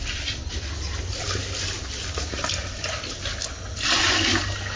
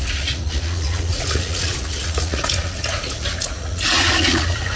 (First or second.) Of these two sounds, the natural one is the first